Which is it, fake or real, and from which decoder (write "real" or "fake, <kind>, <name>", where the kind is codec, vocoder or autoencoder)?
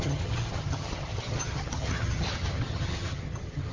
fake, vocoder, HiFi-GAN